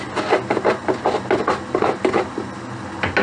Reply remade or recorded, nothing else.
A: recorded